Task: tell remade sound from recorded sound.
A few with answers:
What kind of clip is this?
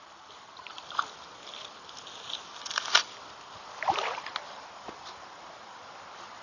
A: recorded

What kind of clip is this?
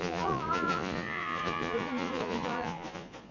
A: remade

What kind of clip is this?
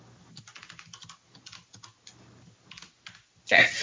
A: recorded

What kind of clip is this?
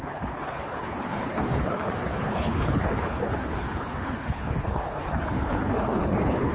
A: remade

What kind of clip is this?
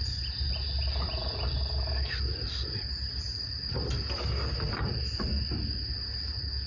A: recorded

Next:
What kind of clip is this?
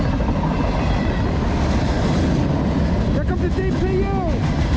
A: recorded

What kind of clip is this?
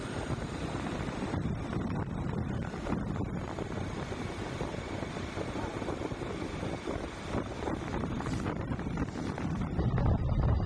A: remade